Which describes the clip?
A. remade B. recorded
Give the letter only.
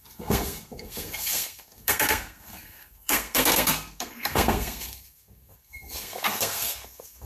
A